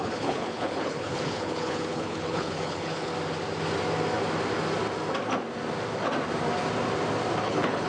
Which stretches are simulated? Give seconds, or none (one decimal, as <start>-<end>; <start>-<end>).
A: 0.0-3.1; 7.4-7.9